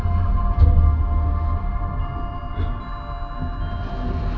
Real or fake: real